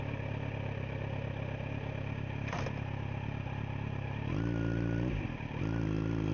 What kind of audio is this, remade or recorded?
recorded